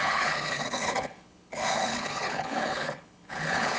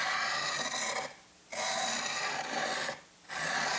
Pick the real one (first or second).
second